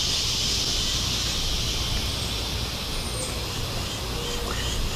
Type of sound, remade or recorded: recorded